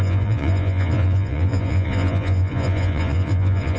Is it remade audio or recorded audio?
remade